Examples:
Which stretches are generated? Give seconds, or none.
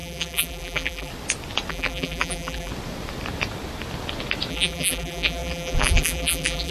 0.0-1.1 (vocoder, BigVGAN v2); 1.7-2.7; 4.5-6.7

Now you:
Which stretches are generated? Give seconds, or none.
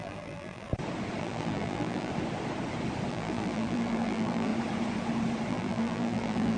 0.0-0.7 (vocoder, BigVGAN v2); 1.2-2.1; 3.1-4.5; 5.5-6.6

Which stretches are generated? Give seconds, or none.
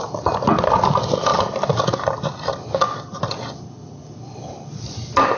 none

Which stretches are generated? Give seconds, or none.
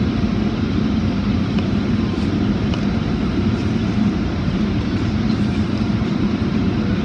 0.0-7.0 (vocoder, BigVGAN v2)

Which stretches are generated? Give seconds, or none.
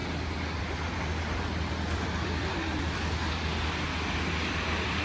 0.6-3.5 (vocoder, BigVGAN v2); 4.3-5.0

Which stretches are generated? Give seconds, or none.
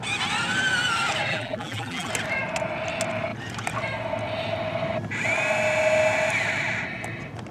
1.3-2.1 (vocoder, BigVGAN v2)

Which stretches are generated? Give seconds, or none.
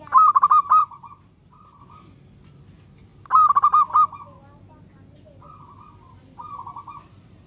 0.8-1.8 (vocoder, BigVGAN v2)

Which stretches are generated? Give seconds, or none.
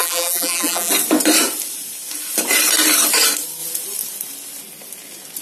0.0-0.9 (vocoder, BigVGAN v2)